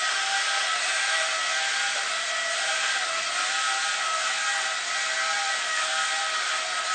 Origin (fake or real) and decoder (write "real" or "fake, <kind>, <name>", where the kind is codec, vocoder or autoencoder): real